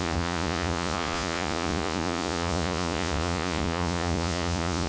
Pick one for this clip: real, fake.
fake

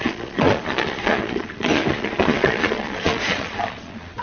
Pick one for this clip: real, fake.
fake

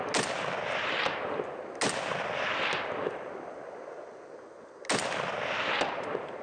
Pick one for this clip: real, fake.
real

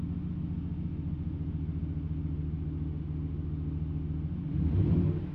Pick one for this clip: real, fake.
real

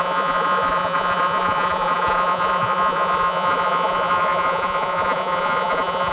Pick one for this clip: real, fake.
fake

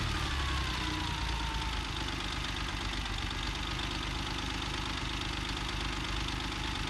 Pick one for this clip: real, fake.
real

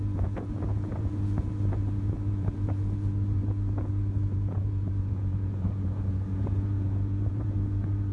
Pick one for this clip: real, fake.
fake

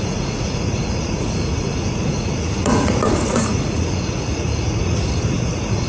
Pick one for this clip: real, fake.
fake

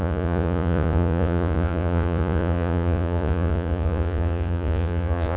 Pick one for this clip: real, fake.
fake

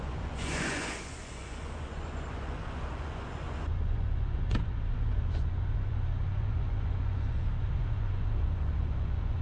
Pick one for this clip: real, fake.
fake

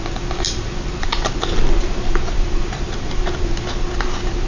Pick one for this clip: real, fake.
real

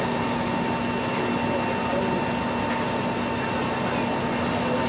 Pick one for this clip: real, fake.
real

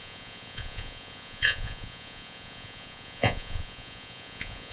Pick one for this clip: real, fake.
fake